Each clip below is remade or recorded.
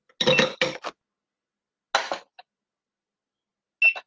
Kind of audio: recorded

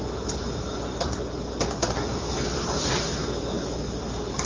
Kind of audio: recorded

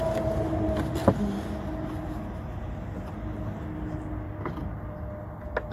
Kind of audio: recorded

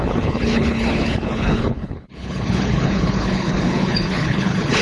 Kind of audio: remade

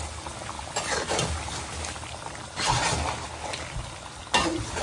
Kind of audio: recorded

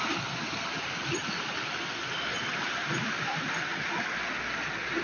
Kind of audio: recorded